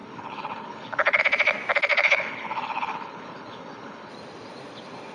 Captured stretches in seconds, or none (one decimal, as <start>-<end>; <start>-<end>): 1.2-1.9; 4.1-5.1